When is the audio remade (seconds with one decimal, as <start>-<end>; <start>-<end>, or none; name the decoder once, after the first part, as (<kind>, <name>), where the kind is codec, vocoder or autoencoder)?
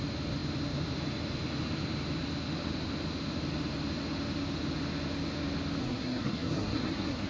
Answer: 5.8-7.3 (codec, SNAC)